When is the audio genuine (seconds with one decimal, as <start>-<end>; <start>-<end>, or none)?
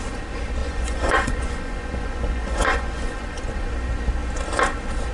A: 0.0-0.6; 3.7-5.1